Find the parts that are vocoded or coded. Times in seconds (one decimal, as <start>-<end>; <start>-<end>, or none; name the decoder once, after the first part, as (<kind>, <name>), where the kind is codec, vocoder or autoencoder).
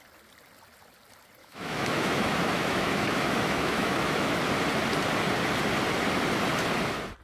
1.4-4.4 (autoencoder, DAC-VAE)